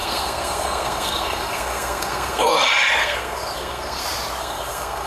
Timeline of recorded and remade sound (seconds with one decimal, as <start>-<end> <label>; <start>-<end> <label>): 0.0-2.5 remade; 2.5-3.0 recorded; 3.0-4.0 remade; 4.0-4.4 recorded; 4.4-5.1 remade